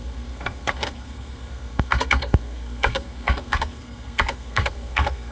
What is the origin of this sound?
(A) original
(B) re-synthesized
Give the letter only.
B